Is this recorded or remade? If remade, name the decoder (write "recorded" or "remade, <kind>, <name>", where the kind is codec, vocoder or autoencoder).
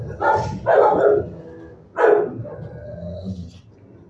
recorded